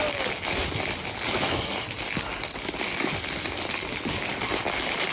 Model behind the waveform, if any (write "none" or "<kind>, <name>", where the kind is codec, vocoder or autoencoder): none